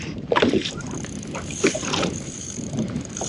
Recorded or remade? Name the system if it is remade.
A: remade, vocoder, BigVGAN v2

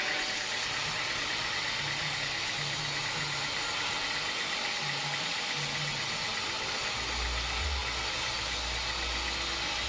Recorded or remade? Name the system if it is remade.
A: recorded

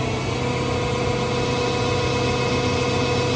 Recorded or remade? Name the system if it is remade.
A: recorded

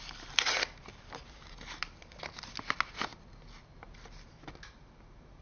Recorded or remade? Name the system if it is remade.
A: recorded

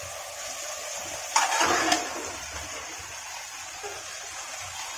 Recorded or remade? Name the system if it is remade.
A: recorded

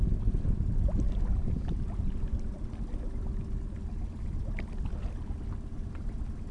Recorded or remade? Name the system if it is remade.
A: recorded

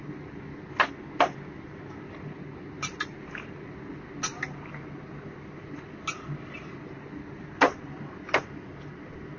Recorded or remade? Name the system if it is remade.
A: recorded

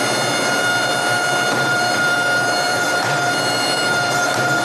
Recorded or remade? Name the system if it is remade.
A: remade, vocoder, BigVGAN v2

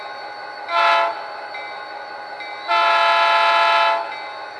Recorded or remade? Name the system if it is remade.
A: recorded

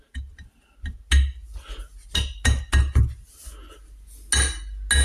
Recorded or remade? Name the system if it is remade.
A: recorded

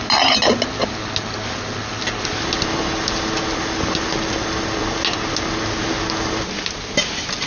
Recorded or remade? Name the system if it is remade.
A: recorded